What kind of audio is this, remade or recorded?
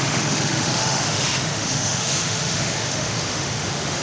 remade